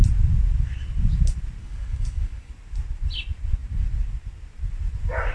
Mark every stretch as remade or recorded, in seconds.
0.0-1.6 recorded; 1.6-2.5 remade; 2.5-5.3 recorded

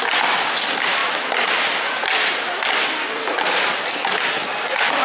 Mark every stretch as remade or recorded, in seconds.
0.0-5.0 recorded

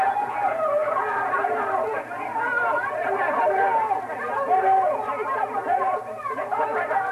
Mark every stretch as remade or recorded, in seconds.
0.0-7.1 recorded

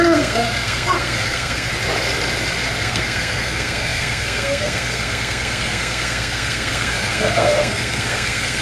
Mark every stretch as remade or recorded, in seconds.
0.0-1.7 remade; 1.7-2.8 recorded; 2.8-8.6 remade